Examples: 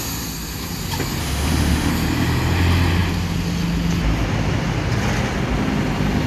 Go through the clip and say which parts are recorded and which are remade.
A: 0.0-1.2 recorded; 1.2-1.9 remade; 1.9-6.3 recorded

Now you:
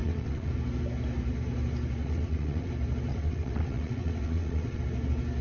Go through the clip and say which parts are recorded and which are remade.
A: 0.0-0.5 remade; 0.5-2.0 recorded; 2.0-2.7 remade; 2.7-3.1 recorded; 3.1-4.8 remade; 4.8-5.4 recorded

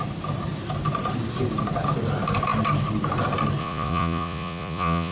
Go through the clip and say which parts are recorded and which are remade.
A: 0.0-3.6 recorded; 3.6-5.1 remade